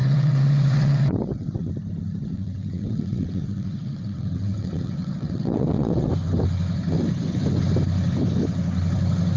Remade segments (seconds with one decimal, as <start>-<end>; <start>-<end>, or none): 0.0-1.7; 2.2-6.1